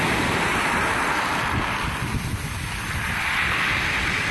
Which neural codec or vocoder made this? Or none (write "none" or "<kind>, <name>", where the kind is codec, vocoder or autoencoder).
none